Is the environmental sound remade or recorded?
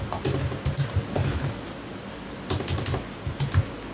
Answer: recorded